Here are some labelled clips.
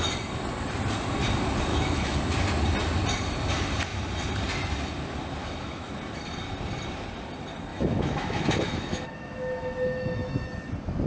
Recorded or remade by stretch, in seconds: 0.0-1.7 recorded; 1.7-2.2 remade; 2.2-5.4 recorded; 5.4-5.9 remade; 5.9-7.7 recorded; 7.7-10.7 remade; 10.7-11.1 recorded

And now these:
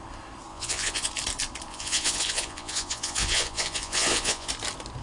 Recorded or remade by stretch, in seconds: 0.0-0.5 recorded; 0.5-1.1 remade; 1.1-1.7 recorded; 1.7-4.5 remade; 4.5-5.0 recorded

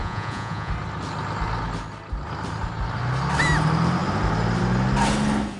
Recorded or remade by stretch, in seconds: 0.0-0.7 remade; 0.7-5.6 recorded

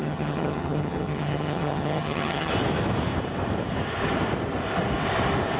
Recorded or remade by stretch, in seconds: 0.0-2.5 remade; 2.5-5.6 recorded

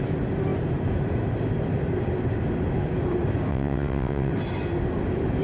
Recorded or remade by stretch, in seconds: 0.0-3.5 recorded; 3.5-4.3 remade; 4.3-5.4 recorded

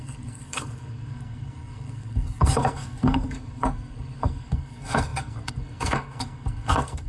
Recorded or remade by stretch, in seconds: 0.0-7.1 remade